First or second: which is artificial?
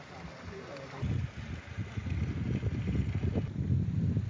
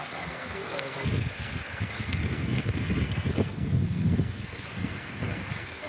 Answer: second